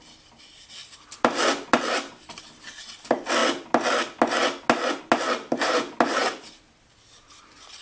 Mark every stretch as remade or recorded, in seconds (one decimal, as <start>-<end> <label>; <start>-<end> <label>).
0.0-0.8 recorded; 0.8-2.4 remade; 2.4-6.2 recorded; 6.2-6.9 remade; 6.9-7.8 recorded